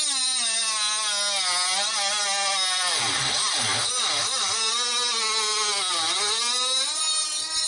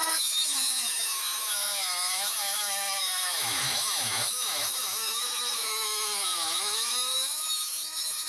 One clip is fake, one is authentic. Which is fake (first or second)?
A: second